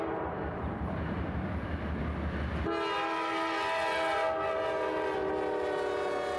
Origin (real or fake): real